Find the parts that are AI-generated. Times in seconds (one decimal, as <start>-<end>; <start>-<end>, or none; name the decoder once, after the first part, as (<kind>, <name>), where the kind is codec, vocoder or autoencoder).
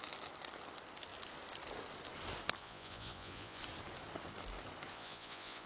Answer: 2.6-3.6 (vocoder, Vocos); 4.9-5.7